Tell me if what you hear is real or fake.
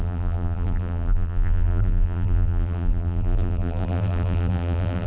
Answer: fake